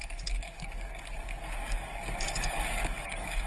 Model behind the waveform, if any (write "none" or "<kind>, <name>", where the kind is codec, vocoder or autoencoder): codec, DAC